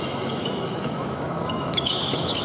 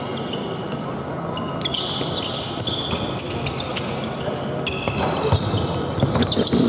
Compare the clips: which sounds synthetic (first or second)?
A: first